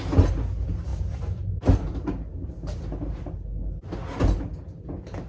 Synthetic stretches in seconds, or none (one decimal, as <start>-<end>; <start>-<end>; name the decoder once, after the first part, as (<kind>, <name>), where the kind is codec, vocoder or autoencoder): none